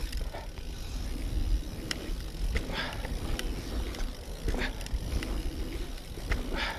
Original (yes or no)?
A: yes